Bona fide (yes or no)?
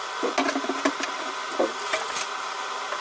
yes